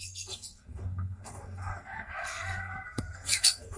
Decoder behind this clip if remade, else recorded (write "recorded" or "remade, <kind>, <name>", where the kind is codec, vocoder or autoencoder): remade, codec, SNAC